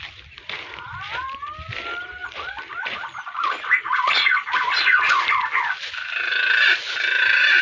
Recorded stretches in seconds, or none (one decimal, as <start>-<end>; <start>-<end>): 0.0-7.6